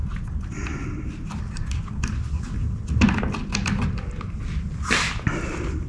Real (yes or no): yes